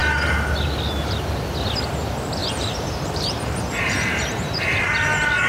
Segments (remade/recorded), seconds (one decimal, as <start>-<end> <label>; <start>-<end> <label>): 0.0-2.4 recorded; 2.4-4.8 remade; 4.8-5.5 recorded

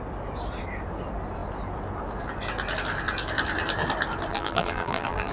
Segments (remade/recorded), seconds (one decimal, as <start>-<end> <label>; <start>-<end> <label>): 0.0-4.3 recorded; 4.3-5.3 remade

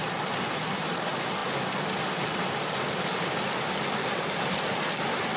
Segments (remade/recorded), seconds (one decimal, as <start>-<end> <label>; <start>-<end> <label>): 0.0-5.4 remade

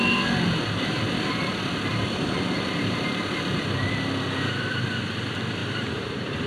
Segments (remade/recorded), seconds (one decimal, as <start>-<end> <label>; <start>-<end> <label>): 0.0-1.9 recorded; 1.9-4.1 remade; 4.1-5.6 recorded; 5.6-6.5 remade